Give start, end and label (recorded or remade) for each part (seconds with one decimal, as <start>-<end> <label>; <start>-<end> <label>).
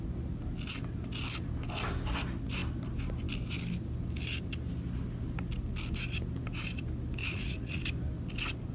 0.0-7.2 recorded; 7.2-7.8 remade; 7.8-8.7 recorded